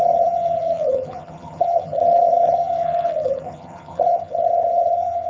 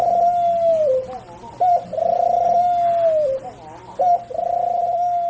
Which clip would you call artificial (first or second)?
first